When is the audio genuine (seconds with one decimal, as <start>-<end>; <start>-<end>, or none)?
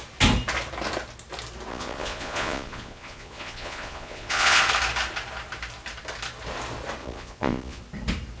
0.0-1.7; 4.6-7.0; 7.8-8.4